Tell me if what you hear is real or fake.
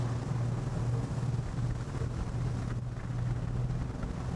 real